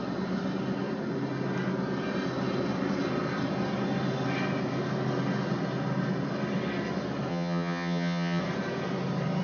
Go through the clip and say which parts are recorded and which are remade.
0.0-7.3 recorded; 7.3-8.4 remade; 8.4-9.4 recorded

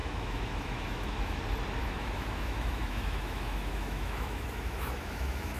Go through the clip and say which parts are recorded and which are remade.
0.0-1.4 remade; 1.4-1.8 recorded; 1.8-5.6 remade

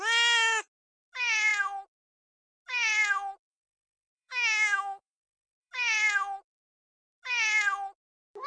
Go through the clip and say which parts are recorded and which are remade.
0.0-3.5 recorded; 3.5-5.7 remade; 5.7-8.5 recorded

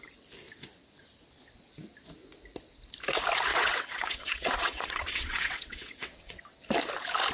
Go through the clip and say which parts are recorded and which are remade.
0.0-3.5 recorded; 3.5-6.4 remade; 6.4-7.3 recorded